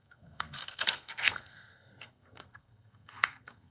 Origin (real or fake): fake